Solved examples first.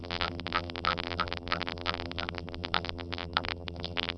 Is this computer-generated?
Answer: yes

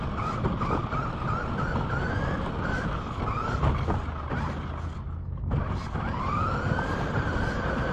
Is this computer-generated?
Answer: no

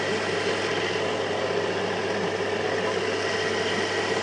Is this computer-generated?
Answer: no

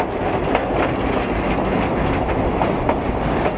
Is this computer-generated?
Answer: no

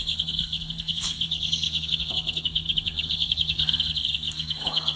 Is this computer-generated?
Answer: yes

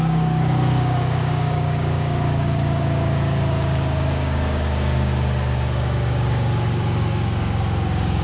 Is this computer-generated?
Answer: yes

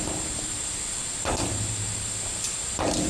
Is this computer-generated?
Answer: yes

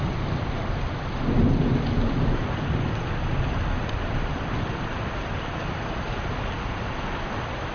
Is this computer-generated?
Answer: no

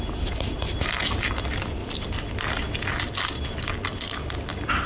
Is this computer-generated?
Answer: no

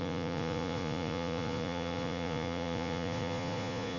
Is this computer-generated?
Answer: yes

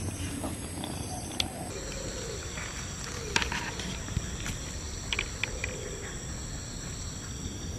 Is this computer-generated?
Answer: no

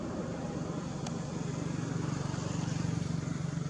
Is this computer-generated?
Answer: no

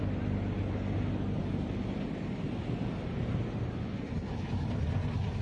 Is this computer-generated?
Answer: no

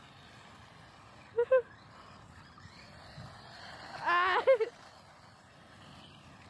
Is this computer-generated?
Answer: no